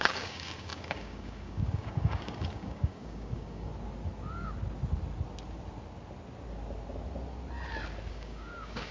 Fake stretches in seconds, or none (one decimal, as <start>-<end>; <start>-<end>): 0.0-3.7; 8.1-8.9